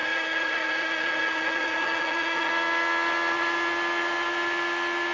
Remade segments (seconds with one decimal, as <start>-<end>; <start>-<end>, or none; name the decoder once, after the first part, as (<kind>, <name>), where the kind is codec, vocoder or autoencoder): 0.0-2.5 (vocoder, HiFi-GAN)